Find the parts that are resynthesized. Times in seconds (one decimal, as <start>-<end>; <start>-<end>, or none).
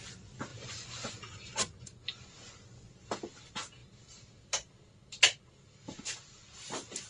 0.5-2.9